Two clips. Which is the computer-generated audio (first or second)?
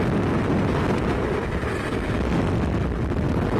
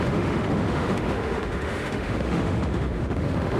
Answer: second